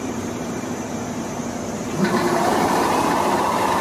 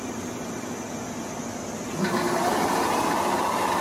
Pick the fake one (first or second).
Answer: first